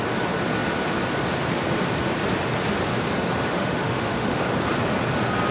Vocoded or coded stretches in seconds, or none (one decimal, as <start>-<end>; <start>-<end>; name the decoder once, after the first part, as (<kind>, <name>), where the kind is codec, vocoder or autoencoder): 3.5-4.4 (autoencoder, DAC-VAE)